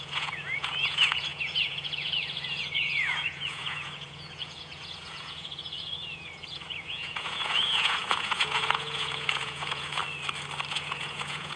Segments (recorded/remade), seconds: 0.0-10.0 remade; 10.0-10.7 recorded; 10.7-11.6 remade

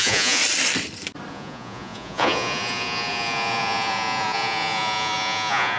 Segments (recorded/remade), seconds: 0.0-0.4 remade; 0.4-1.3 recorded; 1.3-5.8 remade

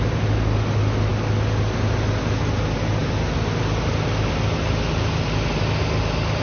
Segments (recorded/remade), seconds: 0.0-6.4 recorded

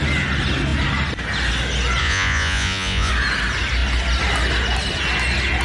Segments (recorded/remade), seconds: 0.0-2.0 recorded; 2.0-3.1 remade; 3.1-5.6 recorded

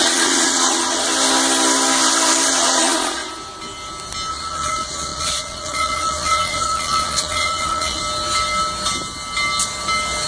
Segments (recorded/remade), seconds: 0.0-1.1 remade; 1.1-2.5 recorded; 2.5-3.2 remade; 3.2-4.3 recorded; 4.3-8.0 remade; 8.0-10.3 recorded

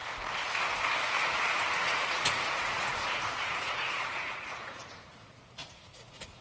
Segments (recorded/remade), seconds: 0.0-1.4 recorded; 1.4-6.4 remade